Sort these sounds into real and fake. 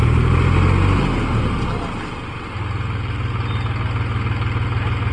real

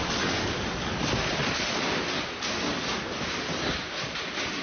real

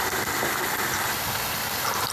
real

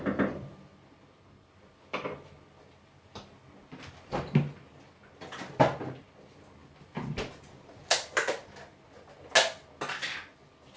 real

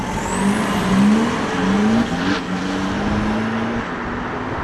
real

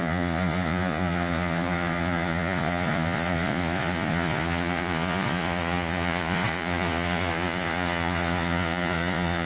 fake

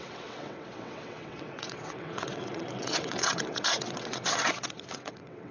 fake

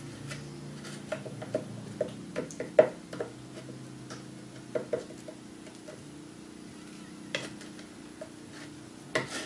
real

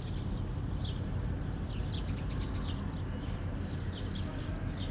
real